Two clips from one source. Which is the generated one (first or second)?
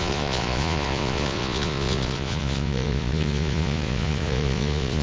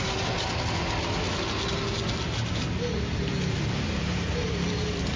first